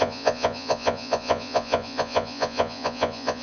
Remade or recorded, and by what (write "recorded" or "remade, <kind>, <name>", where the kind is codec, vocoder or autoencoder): remade, vocoder, Vocos